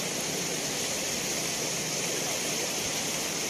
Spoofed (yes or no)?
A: yes